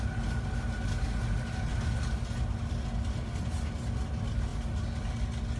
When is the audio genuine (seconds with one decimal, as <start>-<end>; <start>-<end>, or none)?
0.0-5.6

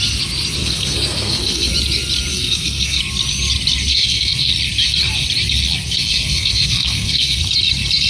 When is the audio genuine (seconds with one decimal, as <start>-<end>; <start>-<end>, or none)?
0.0-0.6; 1.7-2.3; 3.0-3.9; 4.5-6.1; 7.4-8.1

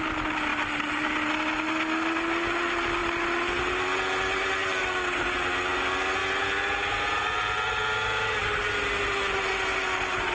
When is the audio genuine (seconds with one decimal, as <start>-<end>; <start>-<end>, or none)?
0.0-10.3

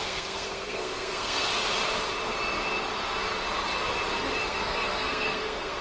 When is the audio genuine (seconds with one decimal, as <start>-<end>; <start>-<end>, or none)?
1.5-4.4

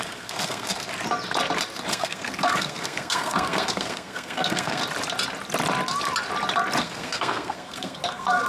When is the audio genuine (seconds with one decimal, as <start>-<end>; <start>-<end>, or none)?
0.9-1.9; 4.8-6.8

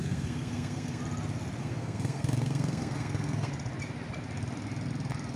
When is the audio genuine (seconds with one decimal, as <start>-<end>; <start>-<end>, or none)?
1.0-1.6; 3.5-5.4

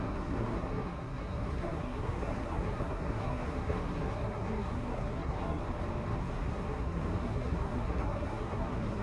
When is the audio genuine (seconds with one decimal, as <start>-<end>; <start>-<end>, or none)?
5.6-6.2